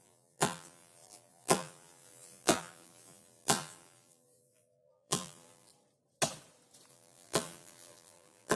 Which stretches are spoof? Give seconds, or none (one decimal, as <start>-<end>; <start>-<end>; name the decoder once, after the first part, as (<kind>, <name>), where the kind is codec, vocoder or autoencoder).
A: 0.0-5.7 (vocoder, BigVGAN v2); 6.9-8.6